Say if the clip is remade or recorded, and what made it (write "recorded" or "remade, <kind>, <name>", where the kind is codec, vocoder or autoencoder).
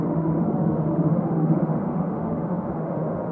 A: remade, autoencoder, DAC-VAE